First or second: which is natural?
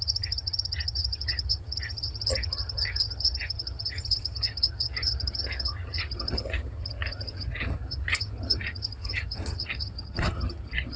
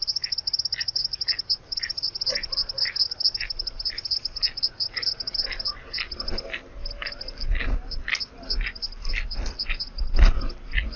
second